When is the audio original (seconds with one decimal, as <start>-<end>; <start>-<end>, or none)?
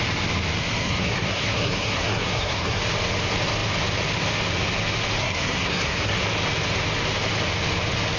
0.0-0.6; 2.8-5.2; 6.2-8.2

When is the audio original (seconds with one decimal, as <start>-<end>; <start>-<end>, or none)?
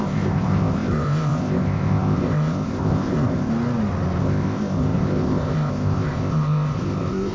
3.5-4.2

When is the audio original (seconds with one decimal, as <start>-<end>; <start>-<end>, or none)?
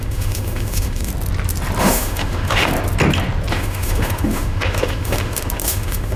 1.1-1.8; 2.7-3.5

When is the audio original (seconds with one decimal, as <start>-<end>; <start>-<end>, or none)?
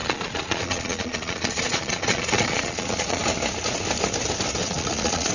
3.2-4.6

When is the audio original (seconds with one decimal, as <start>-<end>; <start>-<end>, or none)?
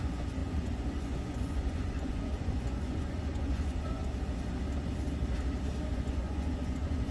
4.0-5.9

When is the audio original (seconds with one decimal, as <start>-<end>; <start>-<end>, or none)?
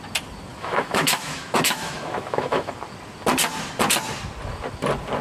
0.0-0.5; 2.7-5.2